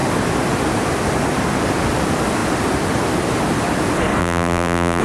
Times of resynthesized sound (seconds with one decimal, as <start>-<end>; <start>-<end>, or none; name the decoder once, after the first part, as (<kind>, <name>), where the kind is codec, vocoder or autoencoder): 4.2-5.0 (vocoder, BigVGAN v2)